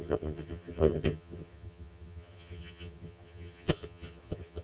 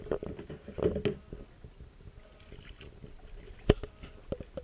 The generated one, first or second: first